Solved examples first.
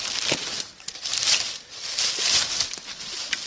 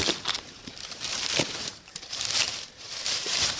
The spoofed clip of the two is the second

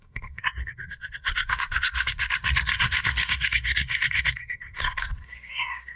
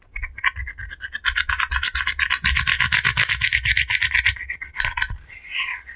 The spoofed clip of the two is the first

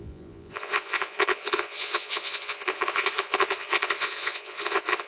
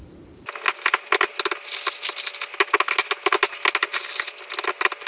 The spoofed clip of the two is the first